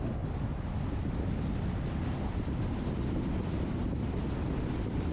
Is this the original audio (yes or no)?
no